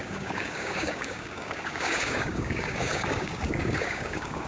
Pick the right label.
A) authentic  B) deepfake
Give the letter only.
B